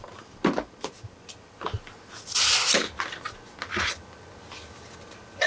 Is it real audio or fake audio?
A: real